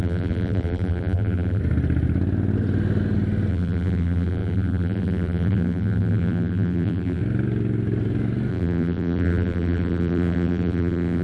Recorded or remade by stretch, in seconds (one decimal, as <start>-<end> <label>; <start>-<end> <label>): 0.0-1.6 remade; 1.6-3.5 recorded; 3.5-7.2 remade; 7.2-8.5 recorded; 8.5-11.2 remade